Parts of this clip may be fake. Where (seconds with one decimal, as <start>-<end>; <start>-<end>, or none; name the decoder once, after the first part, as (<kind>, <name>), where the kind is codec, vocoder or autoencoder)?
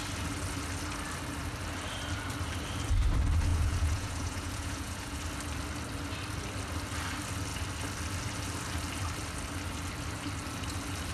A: 3.5-5.2 (vocoder, Vocos)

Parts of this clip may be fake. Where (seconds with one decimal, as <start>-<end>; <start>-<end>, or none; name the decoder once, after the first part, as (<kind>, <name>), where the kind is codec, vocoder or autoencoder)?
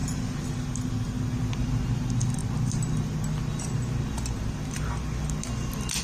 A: none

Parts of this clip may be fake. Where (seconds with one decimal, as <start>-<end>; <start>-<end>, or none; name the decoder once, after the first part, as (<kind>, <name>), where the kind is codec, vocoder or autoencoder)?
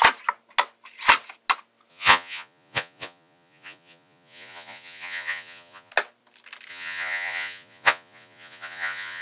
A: 1.9-5.9 (vocoder, Vocos); 6.7-9.2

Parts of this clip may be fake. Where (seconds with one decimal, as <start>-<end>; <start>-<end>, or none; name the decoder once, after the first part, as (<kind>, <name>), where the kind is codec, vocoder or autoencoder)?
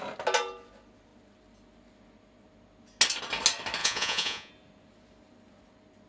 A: 3.8-4.5 (vocoder, Vocos)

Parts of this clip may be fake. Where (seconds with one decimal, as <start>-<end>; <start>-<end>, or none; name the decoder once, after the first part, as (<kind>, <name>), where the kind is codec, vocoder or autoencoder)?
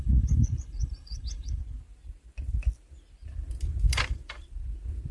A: 0.0-1.6 (codec, HILCodec)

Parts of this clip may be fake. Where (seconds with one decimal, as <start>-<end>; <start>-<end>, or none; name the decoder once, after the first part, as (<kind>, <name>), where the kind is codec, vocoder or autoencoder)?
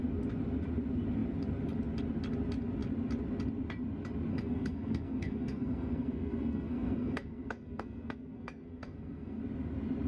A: 4.3-9.4 (codec, SNAC)